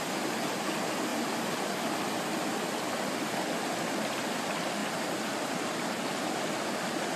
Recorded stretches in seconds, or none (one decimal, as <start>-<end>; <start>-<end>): 0.0-7.2